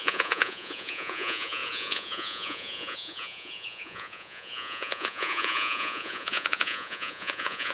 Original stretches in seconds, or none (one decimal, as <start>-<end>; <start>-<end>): none